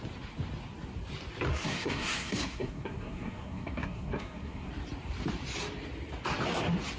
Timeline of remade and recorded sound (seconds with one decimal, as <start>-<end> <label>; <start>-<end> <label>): 0.0-1.5 recorded; 1.5-4.7 remade; 4.7-7.0 recorded